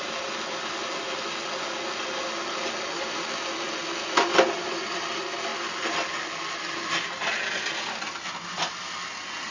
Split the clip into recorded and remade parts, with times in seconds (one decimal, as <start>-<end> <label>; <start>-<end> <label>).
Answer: 0.0-9.5 recorded